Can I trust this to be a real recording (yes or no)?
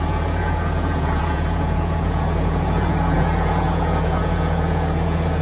no